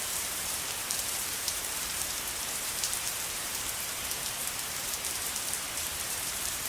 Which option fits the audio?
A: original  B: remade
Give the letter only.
B